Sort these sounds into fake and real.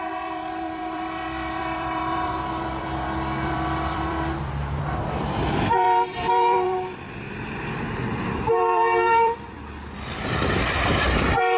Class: fake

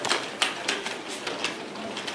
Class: fake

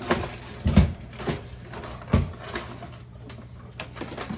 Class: real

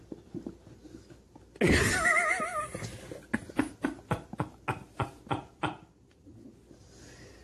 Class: real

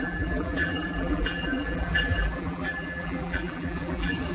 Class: fake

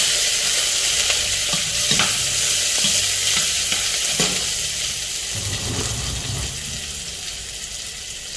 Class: real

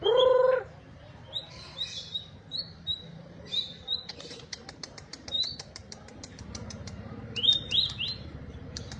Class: fake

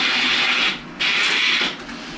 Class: real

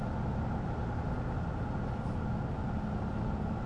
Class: real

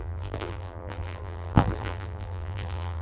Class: fake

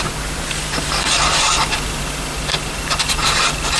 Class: fake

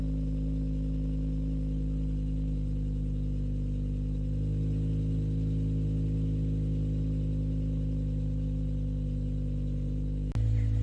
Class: real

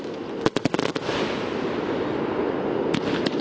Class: real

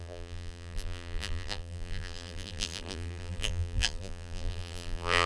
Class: fake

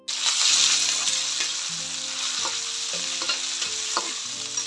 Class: real